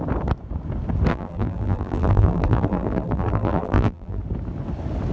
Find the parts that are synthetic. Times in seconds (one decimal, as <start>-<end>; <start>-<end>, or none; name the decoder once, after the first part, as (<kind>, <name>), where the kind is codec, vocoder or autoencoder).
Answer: 1.1-4.2 (vocoder, BigVGAN v2)